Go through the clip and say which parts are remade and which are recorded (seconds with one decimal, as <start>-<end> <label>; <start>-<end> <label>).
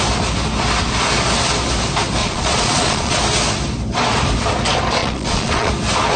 0.0-2.2 recorded; 2.2-3.2 remade; 3.2-5.0 recorded; 5.0-5.7 remade; 5.7-6.2 recorded